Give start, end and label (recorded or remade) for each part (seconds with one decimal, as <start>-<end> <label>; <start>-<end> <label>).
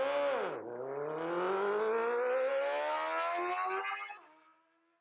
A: 0.0-5.0 recorded